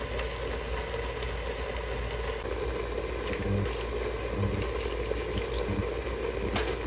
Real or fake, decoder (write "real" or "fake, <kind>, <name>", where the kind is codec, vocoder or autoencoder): real